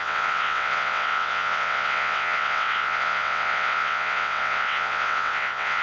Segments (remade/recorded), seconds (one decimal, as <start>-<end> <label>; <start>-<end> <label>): 0.0-5.8 remade